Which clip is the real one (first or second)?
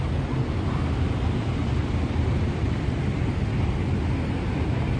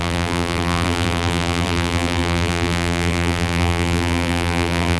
first